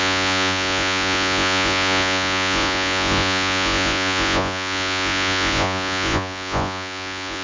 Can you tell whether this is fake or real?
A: fake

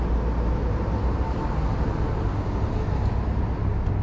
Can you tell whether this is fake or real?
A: real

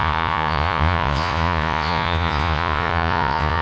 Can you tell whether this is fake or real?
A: fake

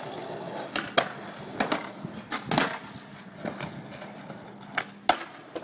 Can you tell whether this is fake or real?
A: real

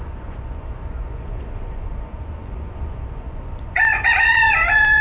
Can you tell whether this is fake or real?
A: fake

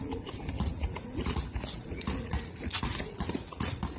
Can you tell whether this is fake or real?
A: fake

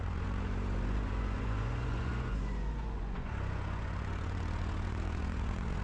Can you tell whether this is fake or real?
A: fake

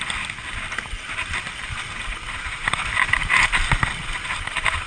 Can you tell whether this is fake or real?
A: real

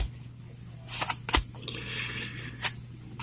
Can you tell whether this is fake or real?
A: real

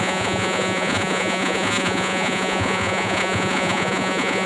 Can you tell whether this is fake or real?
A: fake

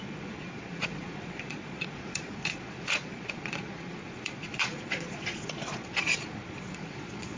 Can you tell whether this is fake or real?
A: fake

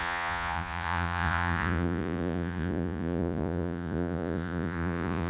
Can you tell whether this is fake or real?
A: fake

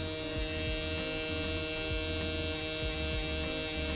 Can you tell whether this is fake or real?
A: real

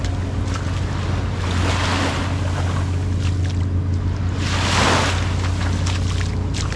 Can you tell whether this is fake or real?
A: real